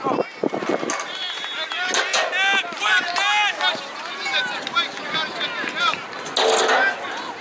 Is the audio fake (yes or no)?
no